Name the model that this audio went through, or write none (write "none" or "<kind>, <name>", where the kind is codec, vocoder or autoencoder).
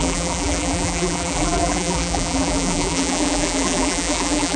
vocoder, BigVGAN v2